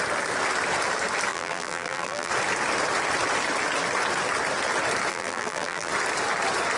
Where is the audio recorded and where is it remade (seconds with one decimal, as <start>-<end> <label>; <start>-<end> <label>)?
0.0-1.3 recorded; 1.3-2.3 remade; 2.3-5.1 recorded; 5.1-5.9 remade; 5.9-6.8 recorded